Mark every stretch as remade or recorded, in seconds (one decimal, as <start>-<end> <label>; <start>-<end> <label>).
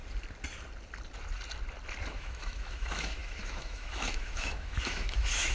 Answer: 0.0-2.1 recorded; 2.1-5.5 remade